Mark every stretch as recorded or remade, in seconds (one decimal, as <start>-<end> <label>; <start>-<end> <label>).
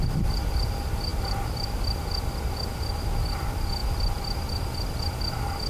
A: 0.0-5.7 recorded